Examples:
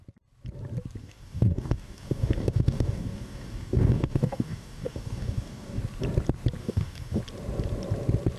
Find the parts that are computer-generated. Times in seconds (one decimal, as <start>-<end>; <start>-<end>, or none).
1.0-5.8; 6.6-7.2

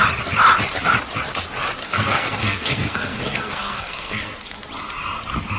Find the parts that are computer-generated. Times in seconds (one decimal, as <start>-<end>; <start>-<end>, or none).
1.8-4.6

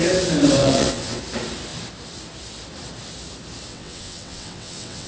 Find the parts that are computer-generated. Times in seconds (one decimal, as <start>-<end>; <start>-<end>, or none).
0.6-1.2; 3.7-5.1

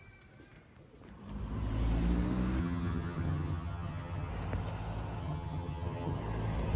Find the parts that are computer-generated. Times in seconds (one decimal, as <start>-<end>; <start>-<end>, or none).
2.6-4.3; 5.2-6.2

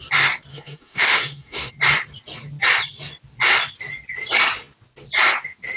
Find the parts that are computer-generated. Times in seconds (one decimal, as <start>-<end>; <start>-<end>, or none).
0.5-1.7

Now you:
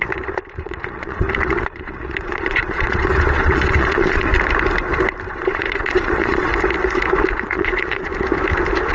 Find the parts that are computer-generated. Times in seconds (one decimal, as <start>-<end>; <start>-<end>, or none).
0.0-4.3; 5.3-6.5; 7.3-8.1